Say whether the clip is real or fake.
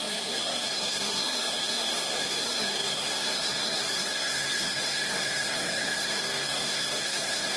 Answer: fake